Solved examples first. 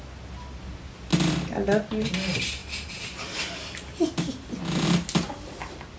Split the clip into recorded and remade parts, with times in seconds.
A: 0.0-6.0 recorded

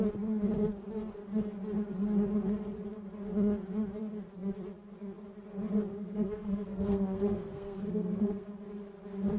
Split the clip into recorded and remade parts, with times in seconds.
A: 0.0-5.9 recorded; 5.9-8.5 remade; 8.5-9.4 recorded